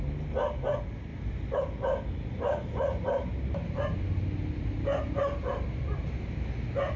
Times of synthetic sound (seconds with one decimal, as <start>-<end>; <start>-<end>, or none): 3.3-4.0